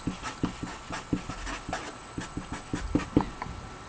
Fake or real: real